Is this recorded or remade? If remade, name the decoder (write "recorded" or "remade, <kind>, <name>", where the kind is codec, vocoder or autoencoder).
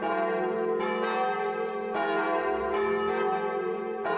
recorded